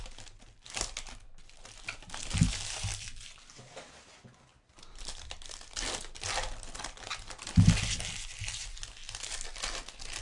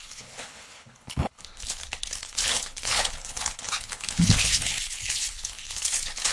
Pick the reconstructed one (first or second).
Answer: second